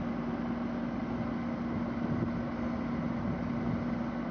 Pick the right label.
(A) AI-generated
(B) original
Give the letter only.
B